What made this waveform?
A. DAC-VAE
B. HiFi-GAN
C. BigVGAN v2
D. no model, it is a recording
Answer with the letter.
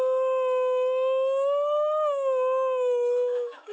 A